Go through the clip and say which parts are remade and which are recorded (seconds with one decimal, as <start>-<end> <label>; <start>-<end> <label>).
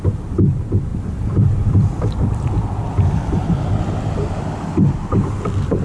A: 0.0-5.8 recorded